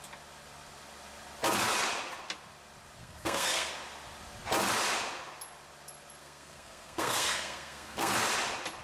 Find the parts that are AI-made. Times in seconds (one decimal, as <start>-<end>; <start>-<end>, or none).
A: 3.0-3.7; 6.2-8.1